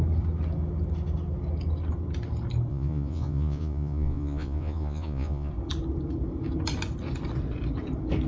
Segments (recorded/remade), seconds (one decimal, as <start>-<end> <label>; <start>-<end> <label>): 0.0-2.7 recorded; 2.7-5.5 remade; 5.5-8.3 recorded